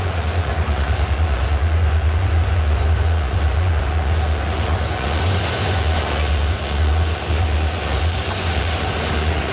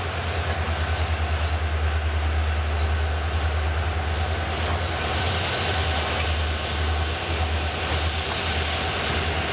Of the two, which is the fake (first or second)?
first